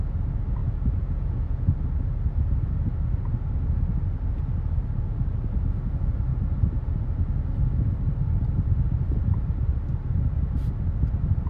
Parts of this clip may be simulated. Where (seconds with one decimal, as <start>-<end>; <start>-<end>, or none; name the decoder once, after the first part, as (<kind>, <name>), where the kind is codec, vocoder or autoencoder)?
0.6-1.7 (vocoder, Vocos)